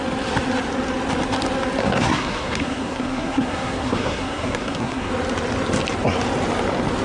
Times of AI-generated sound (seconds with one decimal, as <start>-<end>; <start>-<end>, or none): 1.8-5.1